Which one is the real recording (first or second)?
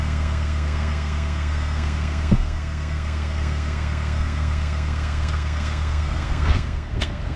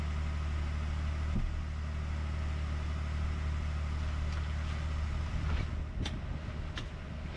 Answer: second